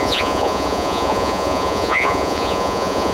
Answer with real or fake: fake